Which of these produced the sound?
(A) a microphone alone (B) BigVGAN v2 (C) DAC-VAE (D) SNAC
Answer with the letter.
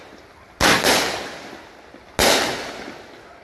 A